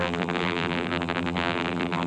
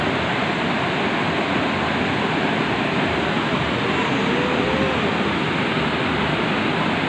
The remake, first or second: first